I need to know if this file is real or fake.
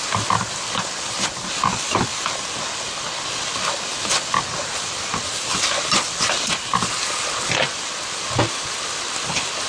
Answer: real